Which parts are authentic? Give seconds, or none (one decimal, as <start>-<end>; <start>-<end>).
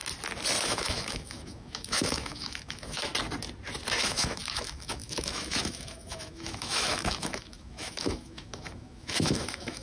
0.0-0.6; 3.1-4.0